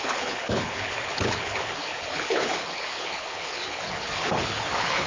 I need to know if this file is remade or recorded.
remade